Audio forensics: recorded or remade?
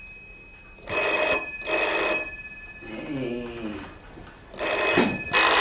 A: recorded